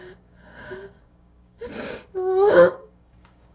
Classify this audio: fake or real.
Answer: fake